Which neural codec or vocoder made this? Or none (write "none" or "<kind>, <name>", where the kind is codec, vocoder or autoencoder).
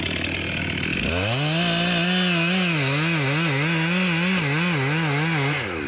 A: none